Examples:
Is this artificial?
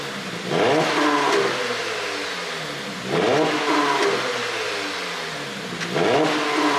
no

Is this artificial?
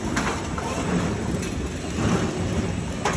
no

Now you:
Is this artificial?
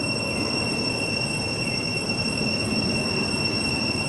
no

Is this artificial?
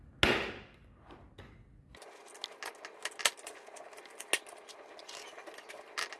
no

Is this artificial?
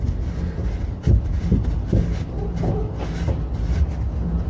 no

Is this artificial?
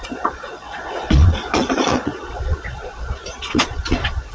yes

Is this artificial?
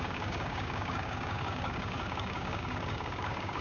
yes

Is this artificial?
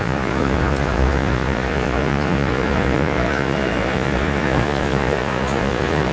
yes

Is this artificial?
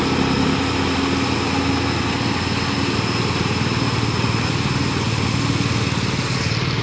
no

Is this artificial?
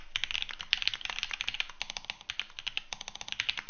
no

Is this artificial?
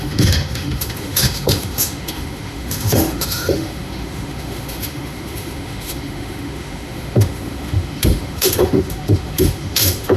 yes